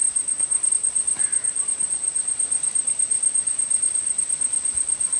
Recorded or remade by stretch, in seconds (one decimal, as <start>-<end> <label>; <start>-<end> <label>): 0.0-0.7 remade; 0.7-1.2 recorded; 1.2-4.3 remade; 4.3-5.2 recorded